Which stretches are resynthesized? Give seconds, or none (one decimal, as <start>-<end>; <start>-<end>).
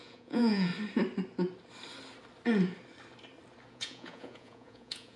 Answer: 0.0-0.7; 3.7-5.2